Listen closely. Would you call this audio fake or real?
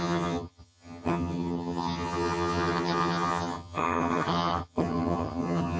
fake